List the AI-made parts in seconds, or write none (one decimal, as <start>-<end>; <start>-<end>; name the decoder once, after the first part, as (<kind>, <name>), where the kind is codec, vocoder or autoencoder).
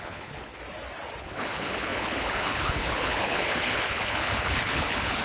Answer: 0.0-0.6 (codec, HILCodec); 1.2-5.2